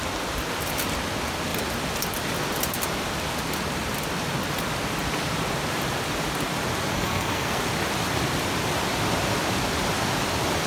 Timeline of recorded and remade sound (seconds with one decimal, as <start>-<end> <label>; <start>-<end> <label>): 0.0-6.9 recorded; 6.9-7.6 remade; 7.6-10.7 recorded